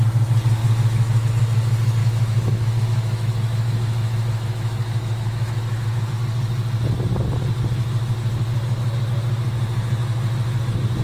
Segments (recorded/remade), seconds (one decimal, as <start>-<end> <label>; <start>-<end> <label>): 0.0-0.6 recorded; 0.6-1.3 remade; 1.3-2.0 recorded; 2.0-6.1 remade; 6.1-11.0 recorded